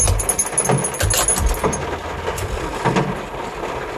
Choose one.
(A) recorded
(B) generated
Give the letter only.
A